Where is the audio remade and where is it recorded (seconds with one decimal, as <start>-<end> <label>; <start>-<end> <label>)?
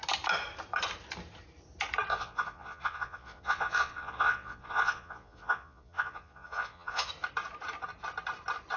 0.0-2.1 recorded; 2.1-7.1 remade; 7.1-8.8 recorded